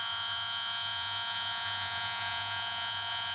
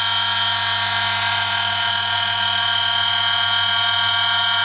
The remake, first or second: first